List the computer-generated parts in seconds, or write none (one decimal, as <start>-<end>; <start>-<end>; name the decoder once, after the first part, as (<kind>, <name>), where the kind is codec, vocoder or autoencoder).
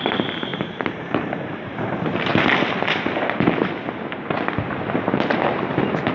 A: 0.0-2.3 (vocoder, BigVGAN v2); 5.0-6.1